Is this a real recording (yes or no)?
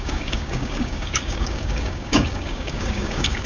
no